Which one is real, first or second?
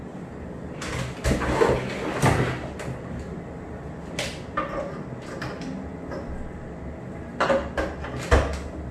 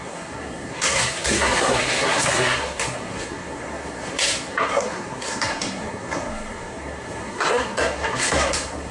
first